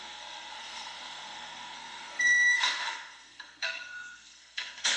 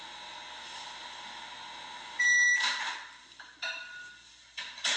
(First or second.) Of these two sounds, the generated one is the first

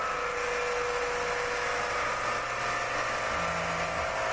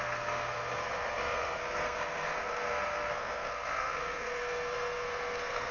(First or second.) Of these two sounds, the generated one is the second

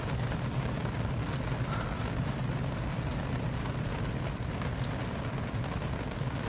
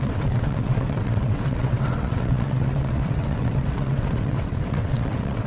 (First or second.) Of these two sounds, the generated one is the second